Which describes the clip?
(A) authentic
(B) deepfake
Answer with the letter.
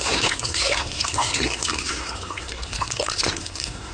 B